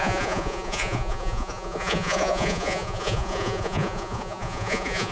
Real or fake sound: fake